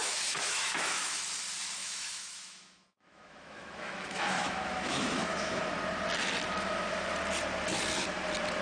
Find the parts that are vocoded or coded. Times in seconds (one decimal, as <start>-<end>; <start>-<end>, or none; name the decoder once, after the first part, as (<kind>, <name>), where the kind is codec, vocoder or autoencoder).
0.0-1.2 (autoencoder, DAC-VAE); 1.8-5.6